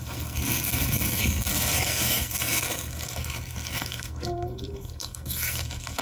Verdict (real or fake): fake